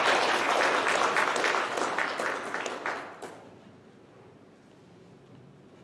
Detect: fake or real real